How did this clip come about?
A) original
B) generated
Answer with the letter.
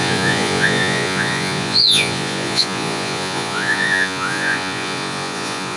B